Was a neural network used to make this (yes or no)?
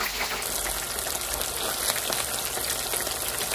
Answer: no